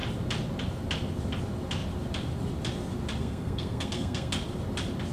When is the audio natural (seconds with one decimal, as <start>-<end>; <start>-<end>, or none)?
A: 0.0-3.2; 4.3-5.1